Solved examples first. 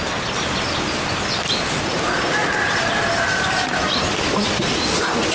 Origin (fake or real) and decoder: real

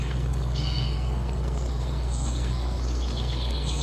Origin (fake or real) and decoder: fake, codec, SNAC